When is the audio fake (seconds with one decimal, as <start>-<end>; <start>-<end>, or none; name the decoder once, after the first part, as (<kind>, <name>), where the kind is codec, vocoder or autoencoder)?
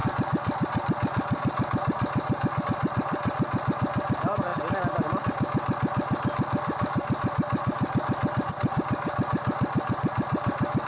none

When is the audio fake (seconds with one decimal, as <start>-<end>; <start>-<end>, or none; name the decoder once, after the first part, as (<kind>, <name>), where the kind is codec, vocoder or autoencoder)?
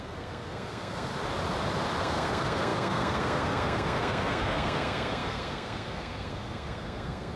0.0-1.1 (codec, SNAC); 2.0-7.4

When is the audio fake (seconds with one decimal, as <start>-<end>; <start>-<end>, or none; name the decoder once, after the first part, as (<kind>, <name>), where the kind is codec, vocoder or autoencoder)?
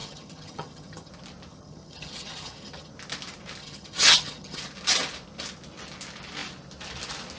0.0-1.1 (vocoder, HiFi-GAN); 1.5-2.9; 3.6-4.6